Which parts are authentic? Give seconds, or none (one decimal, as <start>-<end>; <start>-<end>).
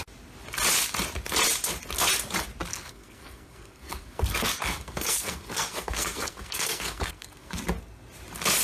0.0-2.7; 7.6-8.6